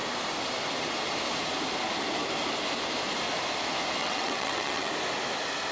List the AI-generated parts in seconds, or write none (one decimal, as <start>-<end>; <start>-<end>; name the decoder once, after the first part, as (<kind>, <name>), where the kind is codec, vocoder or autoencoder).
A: 4.0-4.9 (vocoder, WaveNeXt)